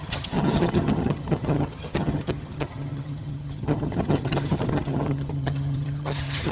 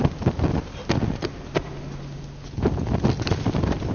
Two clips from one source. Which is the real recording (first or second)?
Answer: second